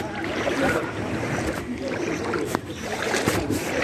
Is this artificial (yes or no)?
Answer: yes